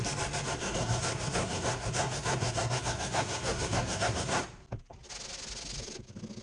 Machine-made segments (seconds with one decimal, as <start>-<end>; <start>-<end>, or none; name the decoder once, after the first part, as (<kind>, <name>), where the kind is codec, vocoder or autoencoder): 0.6-4.4 (codec, SNAC)